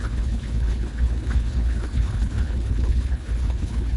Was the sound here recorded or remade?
remade